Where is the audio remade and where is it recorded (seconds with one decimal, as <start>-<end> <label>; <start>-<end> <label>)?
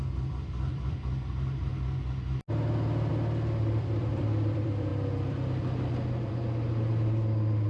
0.0-1.7 remade; 1.7-3.1 recorded; 3.1-7.7 remade